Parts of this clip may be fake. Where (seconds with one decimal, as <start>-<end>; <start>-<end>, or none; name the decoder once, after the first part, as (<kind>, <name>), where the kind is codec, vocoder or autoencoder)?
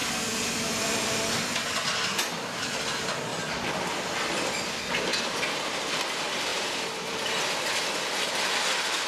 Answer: 0.0-9.1 (vocoder, BigVGAN v2)